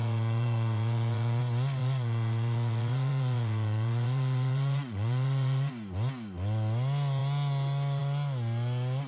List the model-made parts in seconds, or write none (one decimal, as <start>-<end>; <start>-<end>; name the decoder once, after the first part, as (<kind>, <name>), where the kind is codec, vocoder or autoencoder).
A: 0.0-1.4 (vocoder, Vocos); 1.8-5.7